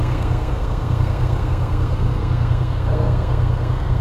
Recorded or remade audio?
remade